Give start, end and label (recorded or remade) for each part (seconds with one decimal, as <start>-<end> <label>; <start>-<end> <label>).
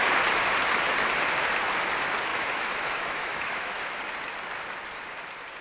0.0-2.3 recorded; 2.3-4.0 remade; 4.0-5.6 recorded